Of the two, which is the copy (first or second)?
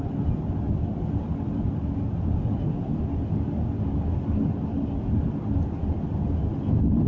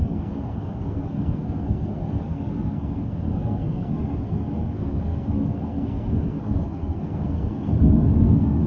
second